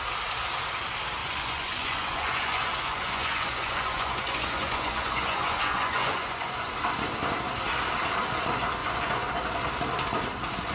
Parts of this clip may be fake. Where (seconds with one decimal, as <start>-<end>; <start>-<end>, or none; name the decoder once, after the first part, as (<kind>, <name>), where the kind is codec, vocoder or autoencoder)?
1.2-6.5 (vocoder, Vocos); 8.8-9.3